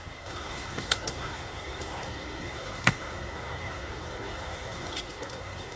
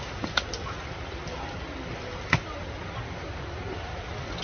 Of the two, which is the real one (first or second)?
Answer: second